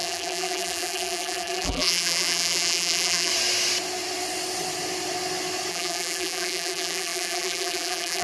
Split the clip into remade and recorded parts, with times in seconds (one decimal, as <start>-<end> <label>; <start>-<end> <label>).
0.0-3.3 remade; 3.3-5.7 recorded; 5.7-8.2 remade